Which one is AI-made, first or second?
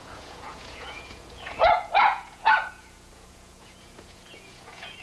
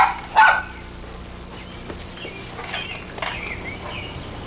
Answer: first